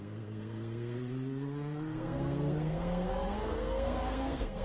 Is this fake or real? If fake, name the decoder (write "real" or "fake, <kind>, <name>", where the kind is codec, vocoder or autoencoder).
fake, codec, SNAC